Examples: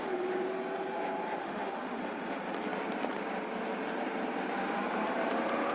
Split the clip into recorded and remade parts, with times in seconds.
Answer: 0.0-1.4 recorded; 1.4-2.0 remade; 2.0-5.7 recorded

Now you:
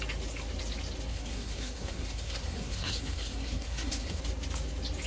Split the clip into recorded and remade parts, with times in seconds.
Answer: 0.0-1.1 recorded; 1.1-4.2 remade; 4.2-5.1 recorded